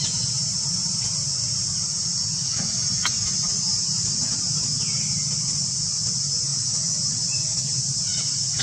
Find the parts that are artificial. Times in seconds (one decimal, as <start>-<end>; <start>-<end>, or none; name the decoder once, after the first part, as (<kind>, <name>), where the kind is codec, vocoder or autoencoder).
none